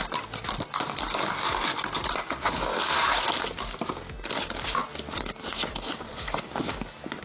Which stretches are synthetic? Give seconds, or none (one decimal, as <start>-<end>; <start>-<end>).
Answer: none